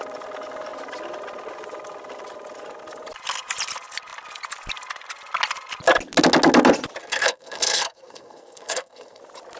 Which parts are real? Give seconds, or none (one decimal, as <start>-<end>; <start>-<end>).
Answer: 0.0-7.0; 9.2-9.6